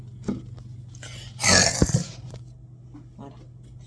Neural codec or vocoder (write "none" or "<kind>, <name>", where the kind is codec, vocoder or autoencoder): none